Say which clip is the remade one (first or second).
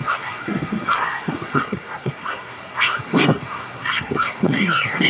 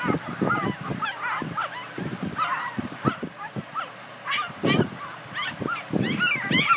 first